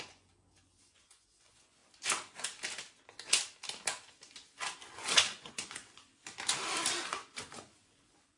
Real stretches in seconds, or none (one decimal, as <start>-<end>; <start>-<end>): 1.8-5.0; 6.1-7.1